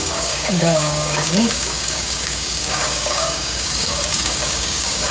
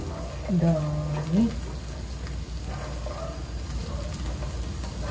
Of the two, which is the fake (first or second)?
first